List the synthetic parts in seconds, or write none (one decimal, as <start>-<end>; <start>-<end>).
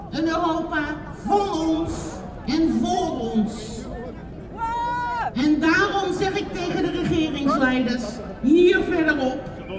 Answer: 2.3-3.7; 4.2-6.6